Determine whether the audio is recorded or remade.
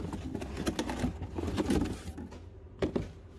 recorded